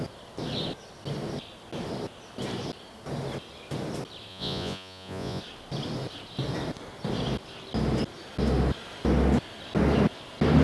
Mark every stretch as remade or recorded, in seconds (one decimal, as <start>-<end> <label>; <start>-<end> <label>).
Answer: 0.0-4.3 recorded; 4.3-5.4 remade; 5.4-10.6 recorded